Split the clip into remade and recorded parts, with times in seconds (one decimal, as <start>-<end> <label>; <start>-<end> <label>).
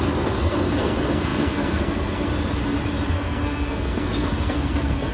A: 0.0-2.3 remade; 2.3-3.1 recorded; 3.1-5.1 remade